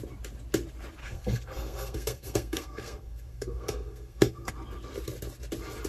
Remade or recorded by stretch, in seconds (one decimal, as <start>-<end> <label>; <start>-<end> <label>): 0.0-1.0 recorded; 1.0-4.5 remade; 4.5-5.9 recorded